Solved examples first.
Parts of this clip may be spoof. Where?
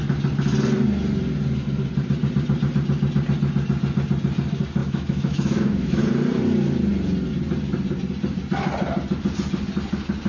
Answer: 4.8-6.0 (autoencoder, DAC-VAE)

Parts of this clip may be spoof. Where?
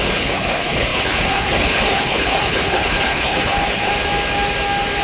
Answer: 0.0-3.9 (codec, HILCodec)